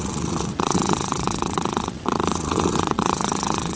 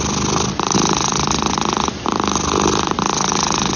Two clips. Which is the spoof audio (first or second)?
first